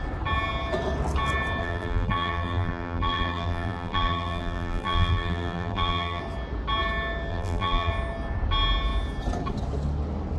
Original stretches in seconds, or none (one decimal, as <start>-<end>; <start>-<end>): 0.0-1.6; 6.2-7.3; 7.9-10.4